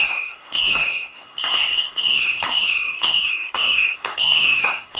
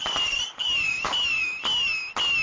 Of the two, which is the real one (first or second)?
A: second